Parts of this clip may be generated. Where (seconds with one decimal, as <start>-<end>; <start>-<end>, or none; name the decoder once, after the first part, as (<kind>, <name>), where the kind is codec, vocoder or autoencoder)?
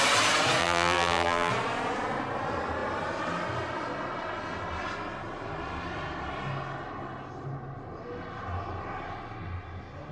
0.6-1.5 (vocoder, BigVGAN v2)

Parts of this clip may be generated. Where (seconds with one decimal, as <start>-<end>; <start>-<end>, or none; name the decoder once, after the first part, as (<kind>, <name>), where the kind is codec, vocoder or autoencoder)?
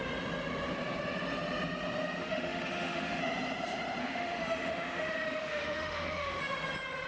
2.2-3.2 (autoencoder, DAC-VAE); 4.0-6.4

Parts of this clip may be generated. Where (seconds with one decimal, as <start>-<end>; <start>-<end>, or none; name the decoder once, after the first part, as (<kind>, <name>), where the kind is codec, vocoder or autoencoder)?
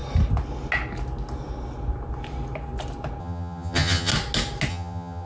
3.2-4.1 (vocoder, HiFi-GAN); 4.7-5.3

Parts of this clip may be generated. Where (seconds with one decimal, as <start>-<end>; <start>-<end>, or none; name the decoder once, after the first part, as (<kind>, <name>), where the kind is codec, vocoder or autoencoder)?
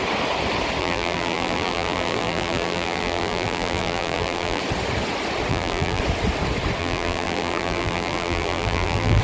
0.8-4.6 (vocoder, BigVGAN v2); 5.5-6.0; 6.8-9.2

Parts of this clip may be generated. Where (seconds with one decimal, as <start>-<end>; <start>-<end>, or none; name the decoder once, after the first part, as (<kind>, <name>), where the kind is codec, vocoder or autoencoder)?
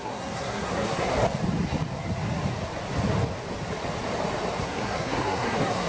0.0-1.1 (codec, SNAC); 4.6-5.9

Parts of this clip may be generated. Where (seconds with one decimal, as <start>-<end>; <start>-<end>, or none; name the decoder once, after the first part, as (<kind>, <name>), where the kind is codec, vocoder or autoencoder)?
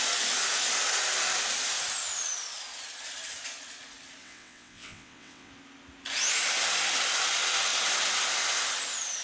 4.2-5.5 (vocoder, WaveNeXt)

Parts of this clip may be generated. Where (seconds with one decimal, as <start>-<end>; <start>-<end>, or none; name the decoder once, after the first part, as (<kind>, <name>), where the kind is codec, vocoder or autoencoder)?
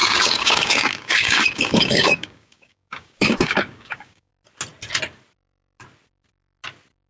0.0-4.3 (codec, DAC)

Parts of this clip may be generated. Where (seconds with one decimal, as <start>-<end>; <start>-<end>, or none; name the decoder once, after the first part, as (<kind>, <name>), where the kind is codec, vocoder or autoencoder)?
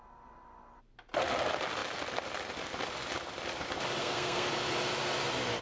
4.0-4.5 (codec, SNAC)